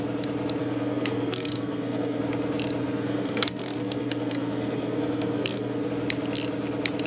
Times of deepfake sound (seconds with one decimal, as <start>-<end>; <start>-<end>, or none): 0.6-2.2; 2.8-5.9